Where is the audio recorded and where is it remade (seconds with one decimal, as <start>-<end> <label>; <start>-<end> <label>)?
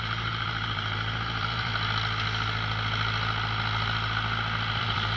0.0-1.7 remade; 1.7-4.8 recorded; 4.8-5.2 remade